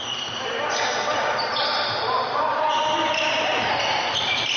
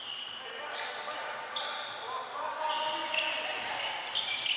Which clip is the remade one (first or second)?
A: first